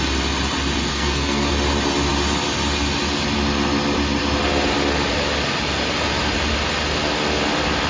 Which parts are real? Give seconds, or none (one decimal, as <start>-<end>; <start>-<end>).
0.0-0.9; 1.5-7.9